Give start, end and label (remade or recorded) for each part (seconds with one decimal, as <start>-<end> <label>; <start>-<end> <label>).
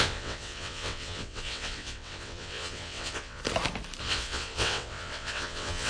0.0-3.4 remade; 3.4-4.0 recorded; 4.0-5.9 remade